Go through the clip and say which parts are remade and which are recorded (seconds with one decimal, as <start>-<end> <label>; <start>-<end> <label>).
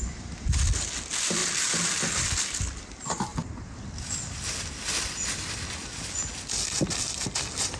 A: 0.0-7.8 recorded